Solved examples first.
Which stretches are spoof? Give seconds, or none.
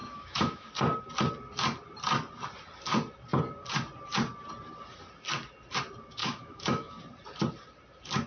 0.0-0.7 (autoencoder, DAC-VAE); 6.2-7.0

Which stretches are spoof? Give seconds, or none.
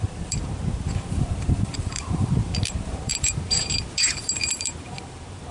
0.0-5.5 (vocoder, BigVGAN v2)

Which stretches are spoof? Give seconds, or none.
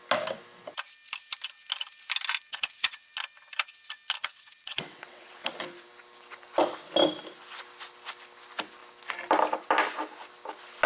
2.5-3.1 (vocoder, WaveNeXt); 4.2-5.5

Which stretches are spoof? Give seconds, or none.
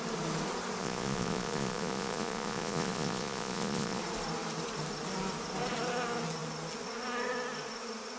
0.8-4.0 (vocoder, Vocos)